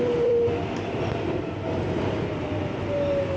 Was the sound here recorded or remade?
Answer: remade